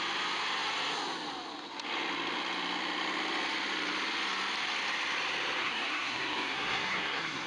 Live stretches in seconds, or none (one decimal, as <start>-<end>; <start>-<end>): 0.0-5.6